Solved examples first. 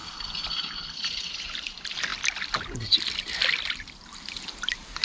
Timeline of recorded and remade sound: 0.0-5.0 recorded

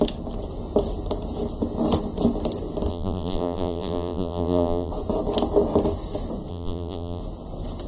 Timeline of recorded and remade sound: 0.0-2.9 recorded; 2.9-4.9 remade; 4.9-6.5 recorded; 6.5-7.2 remade; 7.2-7.9 recorded

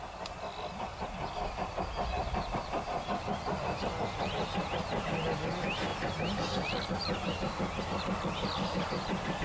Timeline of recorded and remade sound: 0.0-0.9 recorded; 0.9-3.8 remade; 3.8-9.4 recorded

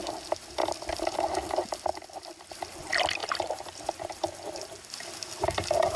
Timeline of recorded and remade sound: 0.0-0.6 recorded; 0.6-1.2 remade; 1.2-1.9 recorded; 1.9-2.5 remade; 2.5-3.2 recorded; 3.2-4.5 remade; 4.5-6.0 recorded

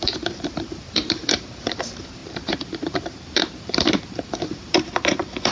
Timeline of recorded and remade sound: 0.0-5.5 remade

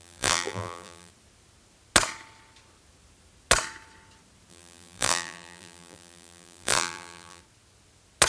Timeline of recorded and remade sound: 0.0-1.1 remade; 1.1-4.5 recorded; 4.5-7.4 remade; 7.4-8.3 recorded

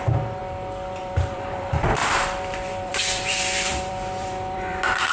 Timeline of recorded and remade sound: 0.0-0.4 remade; 0.4-1.0 recorded; 1.0-5.1 remade